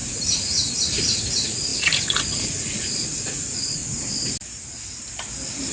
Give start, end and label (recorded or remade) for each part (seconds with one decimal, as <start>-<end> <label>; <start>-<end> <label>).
0.0-3.8 remade; 3.8-5.7 recorded